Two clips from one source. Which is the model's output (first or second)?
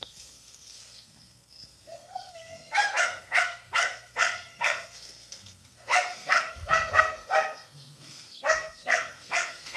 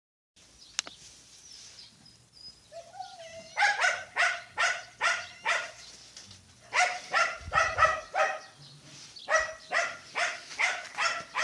first